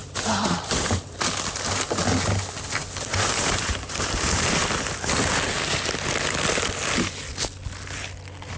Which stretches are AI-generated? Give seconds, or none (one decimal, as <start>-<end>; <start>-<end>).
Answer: 0.0-1.2; 3.1-4.6